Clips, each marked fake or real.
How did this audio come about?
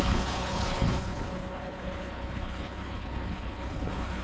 fake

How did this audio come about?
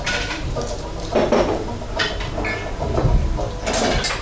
real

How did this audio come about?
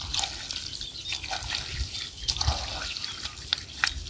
real